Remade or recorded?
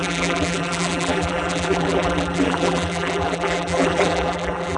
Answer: remade